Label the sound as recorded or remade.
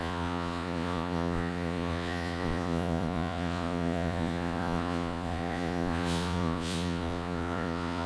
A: remade